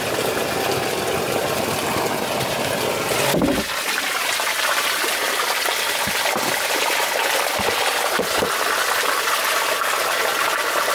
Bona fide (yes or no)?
yes